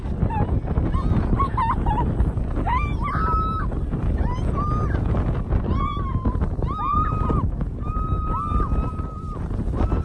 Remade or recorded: recorded